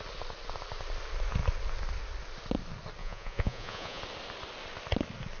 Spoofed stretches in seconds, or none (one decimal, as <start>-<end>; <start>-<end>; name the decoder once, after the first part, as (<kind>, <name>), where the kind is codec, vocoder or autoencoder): 3.0-4.0 (vocoder, Vocos)